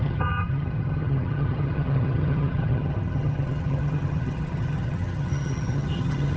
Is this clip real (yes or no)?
no